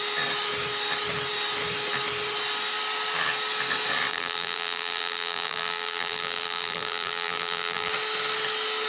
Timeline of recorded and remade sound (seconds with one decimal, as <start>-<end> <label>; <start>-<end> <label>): 0.0-4.1 recorded; 4.1-7.9 remade; 7.9-8.9 recorded